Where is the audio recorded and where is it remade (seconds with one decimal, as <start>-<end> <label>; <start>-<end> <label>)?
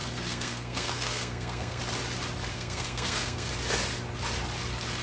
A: 0.0-1.8 remade; 1.8-2.5 recorded; 2.5-3.5 remade; 3.5-5.0 recorded